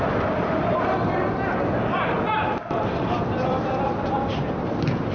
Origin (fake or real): real